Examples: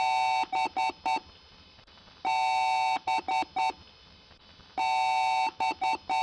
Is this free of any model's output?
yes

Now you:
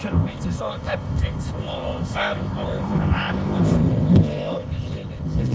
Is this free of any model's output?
no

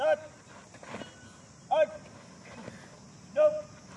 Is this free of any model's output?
yes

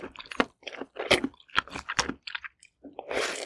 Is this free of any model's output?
no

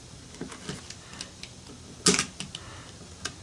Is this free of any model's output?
yes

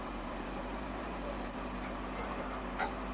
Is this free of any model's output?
no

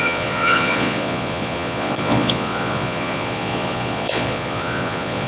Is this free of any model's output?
no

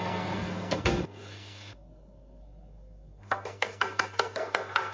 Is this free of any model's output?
no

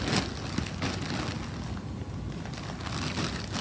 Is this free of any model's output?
yes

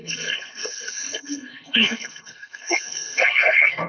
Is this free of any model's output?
no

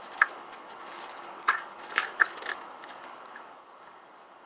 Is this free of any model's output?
no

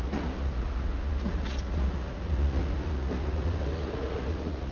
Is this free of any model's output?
no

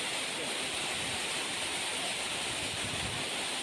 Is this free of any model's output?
yes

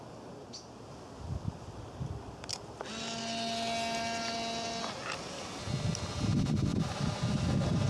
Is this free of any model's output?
yes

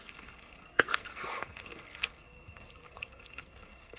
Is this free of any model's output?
no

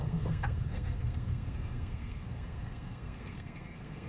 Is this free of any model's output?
no